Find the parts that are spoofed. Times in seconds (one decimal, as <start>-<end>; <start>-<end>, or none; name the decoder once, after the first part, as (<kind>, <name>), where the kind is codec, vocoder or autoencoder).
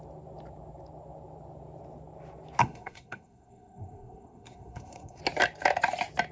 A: 2.6-5.2 (codec, SNAC)